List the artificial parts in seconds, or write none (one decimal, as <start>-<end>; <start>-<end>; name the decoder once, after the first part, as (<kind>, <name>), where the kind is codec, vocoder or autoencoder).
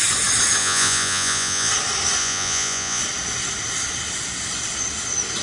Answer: 0.6-1.7 (vocoder, Vocos); 2.2-3.0